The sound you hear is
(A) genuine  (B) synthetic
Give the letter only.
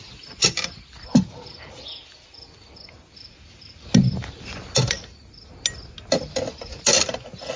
A